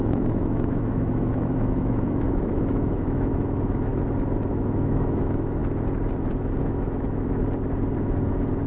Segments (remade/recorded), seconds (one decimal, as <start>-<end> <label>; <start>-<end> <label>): 0.0-3.9 remade; 3.9-4.5 recorded; 4.5-5.6 remade; 5.6-6.6 recorded; 6.6-7.4 remade; 7.4-8.7 recorded